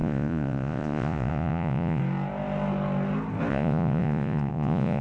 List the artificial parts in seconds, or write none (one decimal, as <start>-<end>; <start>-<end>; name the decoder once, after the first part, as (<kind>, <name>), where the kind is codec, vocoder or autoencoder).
0.0-2.0 (vocoder, Vocos); 3.5-5.0